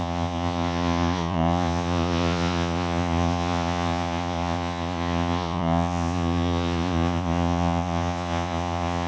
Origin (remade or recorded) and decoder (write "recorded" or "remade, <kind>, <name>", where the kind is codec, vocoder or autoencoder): remade, vocoder, Vocos